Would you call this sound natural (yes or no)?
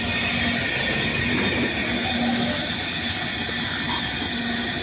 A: yes